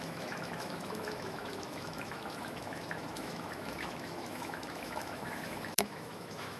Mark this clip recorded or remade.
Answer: remade